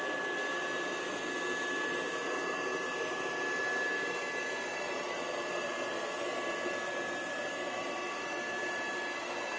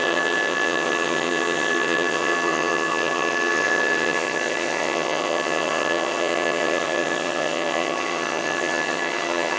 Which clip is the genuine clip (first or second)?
first